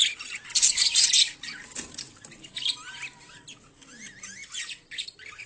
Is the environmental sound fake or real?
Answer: real